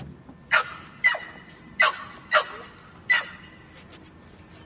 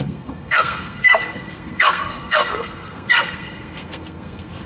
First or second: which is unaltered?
first